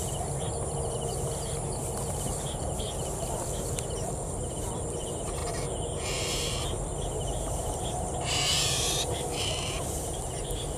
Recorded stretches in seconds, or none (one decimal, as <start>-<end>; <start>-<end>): 0.0-1.1; 1.8-2.8; 5.4-6.5

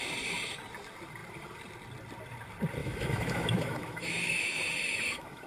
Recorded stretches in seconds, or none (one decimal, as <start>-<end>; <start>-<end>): 0.0-2.8